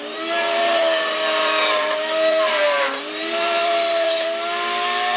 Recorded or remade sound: remade